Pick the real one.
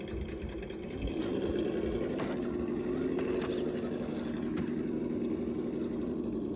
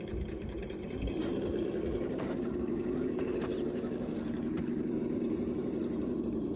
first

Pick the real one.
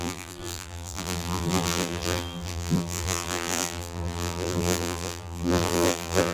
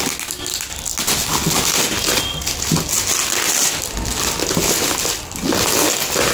second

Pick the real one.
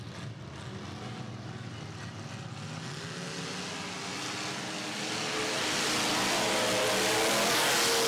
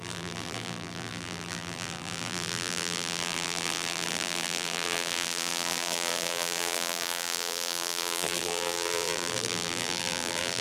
first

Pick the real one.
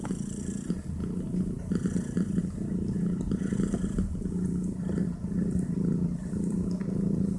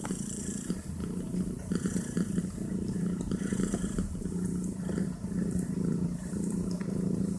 first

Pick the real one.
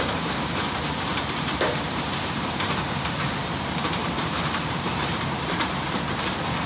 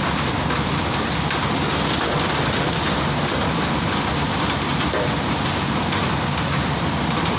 second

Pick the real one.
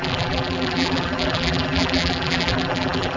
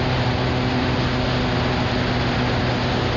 second